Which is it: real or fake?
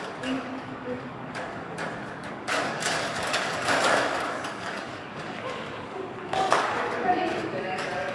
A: fake